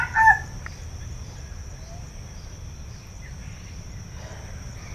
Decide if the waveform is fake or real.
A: real